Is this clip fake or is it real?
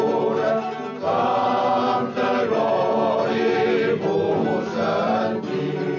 real